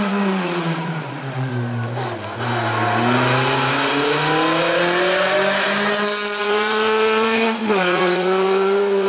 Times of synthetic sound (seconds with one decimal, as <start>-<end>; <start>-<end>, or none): 0.0-1.5; 6.4-9.1